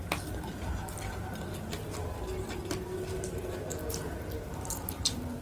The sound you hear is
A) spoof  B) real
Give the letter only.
B